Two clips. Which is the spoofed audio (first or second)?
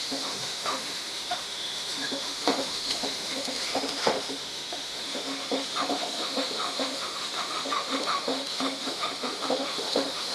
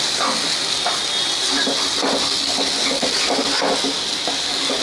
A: first